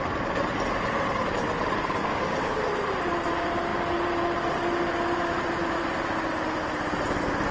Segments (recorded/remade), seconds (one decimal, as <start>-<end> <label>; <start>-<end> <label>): 0.0-2.0 recorded; 2.0-2.6 remade; 2.6-7.5 recorded